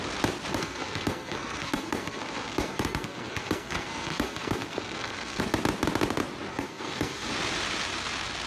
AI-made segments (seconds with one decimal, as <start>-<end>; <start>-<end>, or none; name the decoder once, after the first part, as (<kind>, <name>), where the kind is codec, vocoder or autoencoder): 0.5-5.4 (codec, SNAC); 6.5-7.3